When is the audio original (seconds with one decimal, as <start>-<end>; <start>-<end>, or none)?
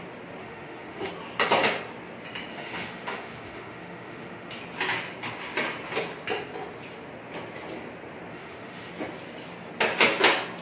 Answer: 0.0-0.4; 1.1-2.5; 4.6-8.3; 8.9-10.6